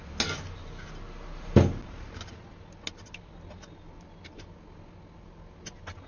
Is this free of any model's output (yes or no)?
yes